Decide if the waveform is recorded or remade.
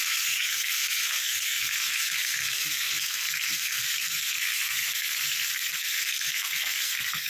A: remade